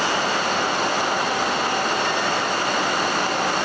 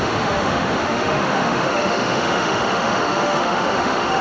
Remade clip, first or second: second